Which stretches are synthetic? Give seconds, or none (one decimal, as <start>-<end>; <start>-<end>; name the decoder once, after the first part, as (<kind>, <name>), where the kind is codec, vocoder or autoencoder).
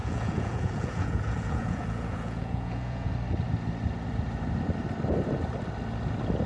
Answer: 0.0-3.1 (vocoder, Vocos)